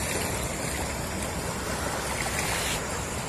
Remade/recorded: recorded